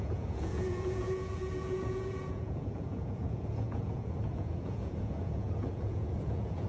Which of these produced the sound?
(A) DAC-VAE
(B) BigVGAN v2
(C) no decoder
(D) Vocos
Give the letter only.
D